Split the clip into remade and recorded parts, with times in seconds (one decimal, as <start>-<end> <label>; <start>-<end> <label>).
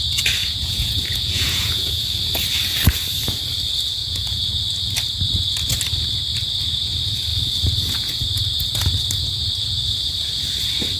0.0-0.4 recorded; 0.4-2.0 remade; 2.0-4.0 recorded; 4.0-4.6 remade; 4.6-11.0 recorded